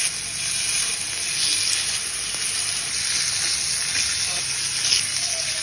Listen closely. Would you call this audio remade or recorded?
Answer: recorded